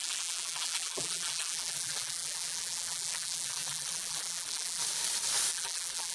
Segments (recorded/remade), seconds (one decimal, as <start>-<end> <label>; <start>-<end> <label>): 0.0-4.8 remade; 4.8-5.5 recorded; 5.5-6.1 remade